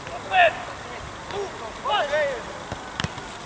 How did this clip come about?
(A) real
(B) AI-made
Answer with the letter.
A